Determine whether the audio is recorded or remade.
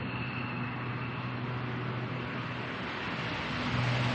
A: recorded